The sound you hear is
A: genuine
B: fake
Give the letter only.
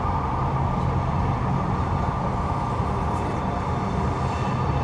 A